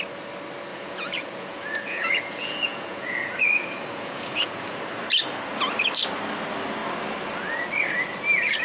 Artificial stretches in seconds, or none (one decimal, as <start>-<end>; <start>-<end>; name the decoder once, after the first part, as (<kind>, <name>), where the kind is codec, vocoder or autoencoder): 0.7-4.8 (vocoder, Vocos)